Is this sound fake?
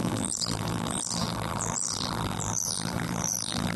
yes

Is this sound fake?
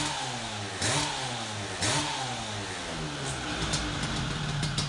no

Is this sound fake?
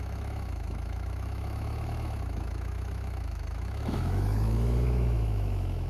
yes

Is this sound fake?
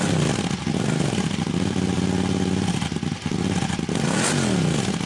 no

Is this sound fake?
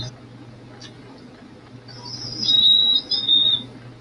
no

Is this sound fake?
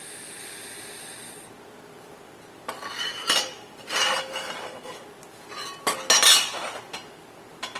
no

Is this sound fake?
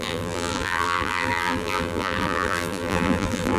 yes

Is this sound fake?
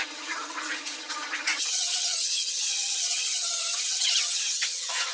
yes